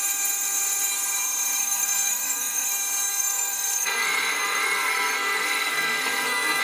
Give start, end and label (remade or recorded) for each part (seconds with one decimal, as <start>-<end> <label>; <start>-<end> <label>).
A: 0.0-1.6 recorded; 1.6-2.7 remade; 2.7-3.1 recorded; 3.1-6.6 remade